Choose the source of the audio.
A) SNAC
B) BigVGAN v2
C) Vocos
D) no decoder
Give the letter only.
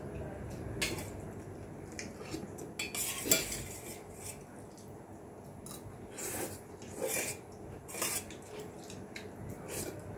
D